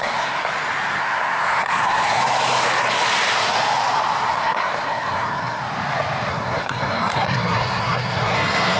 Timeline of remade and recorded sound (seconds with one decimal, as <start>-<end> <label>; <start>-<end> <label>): 0.0-0.5 remade; 0.5-1.0 recorded; 1.0-2.2 remade; 2.2-4.3 recorded; 4.3-5.6 remade; 5.6-6.3 recorded; 6.3-8.8 remade